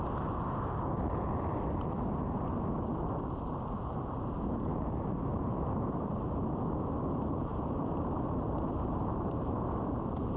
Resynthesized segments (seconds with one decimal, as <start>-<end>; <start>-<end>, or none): 7.5-10.4